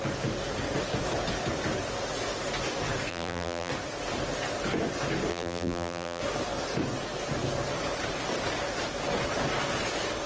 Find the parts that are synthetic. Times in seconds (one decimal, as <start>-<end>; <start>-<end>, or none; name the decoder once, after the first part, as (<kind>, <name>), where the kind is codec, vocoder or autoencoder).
3.1-3.7 (vocoder, BigVGAN v2); 5.3-6.2